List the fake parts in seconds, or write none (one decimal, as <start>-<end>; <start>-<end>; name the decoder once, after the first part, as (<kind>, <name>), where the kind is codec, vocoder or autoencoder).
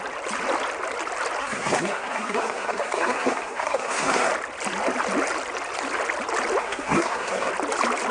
1.4-4.3 (codec, SNAC); 6.6-7.5